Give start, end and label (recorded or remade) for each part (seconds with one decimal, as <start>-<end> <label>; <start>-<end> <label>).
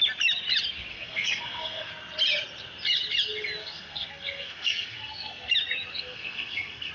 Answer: 0.0-0.9 recorded; 0.9-1.9 remade; 1.9-3.6 recorded; 3.6-5.5 remade; 5.5-5.9 recorded; 5.9-6.9 remade